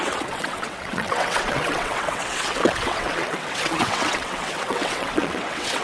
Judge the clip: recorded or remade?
remade